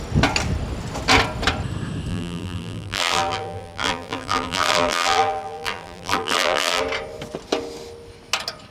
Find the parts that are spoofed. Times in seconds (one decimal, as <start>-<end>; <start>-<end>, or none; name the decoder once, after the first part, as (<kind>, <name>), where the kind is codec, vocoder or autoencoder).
2.1-6.8 (vocoder, BigVGAN v2)